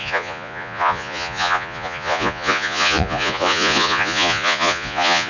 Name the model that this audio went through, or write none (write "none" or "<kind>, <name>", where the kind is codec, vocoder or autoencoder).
vocoder, Vocos